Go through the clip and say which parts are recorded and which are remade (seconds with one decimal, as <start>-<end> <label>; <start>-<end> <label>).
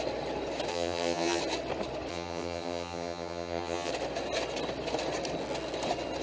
0.0-0.7 recorded; 0.7-1.4 remade; 1.4-2.1 recorded; 2.1-3.9 remade; 3.9-6.2 recorded